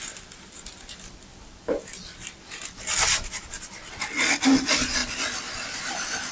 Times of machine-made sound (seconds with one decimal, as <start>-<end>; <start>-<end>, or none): none